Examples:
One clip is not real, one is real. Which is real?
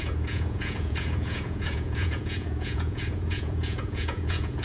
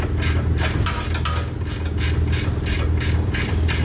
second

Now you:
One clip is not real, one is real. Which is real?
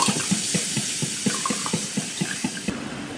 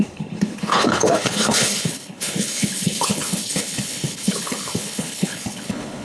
first